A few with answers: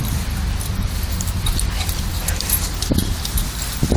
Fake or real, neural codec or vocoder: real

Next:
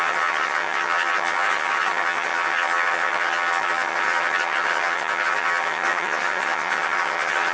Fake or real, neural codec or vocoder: fake, vocoder, HiFi-GAN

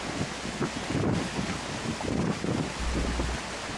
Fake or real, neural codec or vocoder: real